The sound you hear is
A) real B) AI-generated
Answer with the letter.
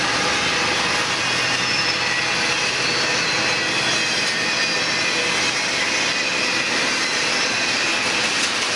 A